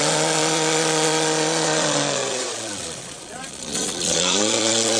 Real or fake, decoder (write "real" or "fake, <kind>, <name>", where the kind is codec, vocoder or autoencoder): fake, vocoder, Vocos